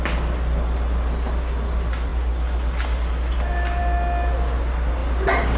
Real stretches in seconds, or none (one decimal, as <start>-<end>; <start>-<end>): 0.0-5.6